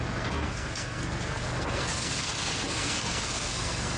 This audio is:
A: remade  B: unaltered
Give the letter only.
A